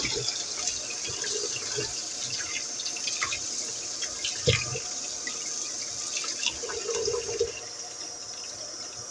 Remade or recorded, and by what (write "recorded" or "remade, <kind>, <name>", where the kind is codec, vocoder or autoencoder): recorded